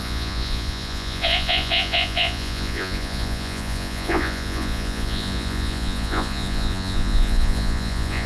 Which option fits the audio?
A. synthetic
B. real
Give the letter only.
A